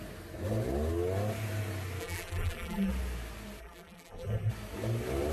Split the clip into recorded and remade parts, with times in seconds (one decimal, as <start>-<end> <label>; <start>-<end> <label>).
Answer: 0.0-2.0 recorded; 2.0-2.9 remade; 2.9-3.6 recorded; 3.6-4.5 remade; 4.5-5.3 recorded